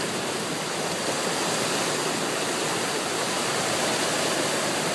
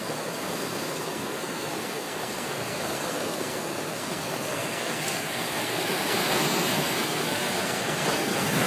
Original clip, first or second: first